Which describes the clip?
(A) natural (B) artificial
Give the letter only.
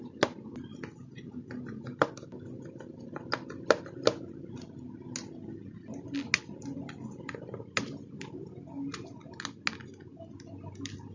A